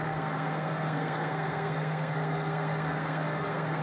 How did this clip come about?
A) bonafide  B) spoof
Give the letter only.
B